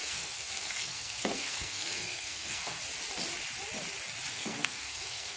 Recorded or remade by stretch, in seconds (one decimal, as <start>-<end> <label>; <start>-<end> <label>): 0.0-2.8 remade; 2.8-4.3 recorded; 4.3-5.4 remade